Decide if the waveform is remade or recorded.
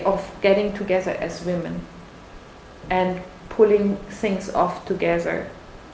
recorded